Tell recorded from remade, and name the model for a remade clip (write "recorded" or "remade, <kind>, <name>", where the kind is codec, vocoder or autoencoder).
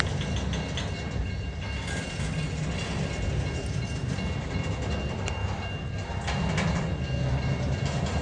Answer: recorded